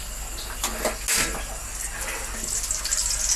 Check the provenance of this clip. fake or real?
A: real